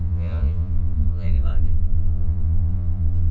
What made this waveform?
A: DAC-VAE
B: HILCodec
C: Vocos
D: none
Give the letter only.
C